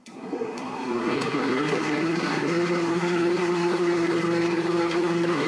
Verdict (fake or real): fake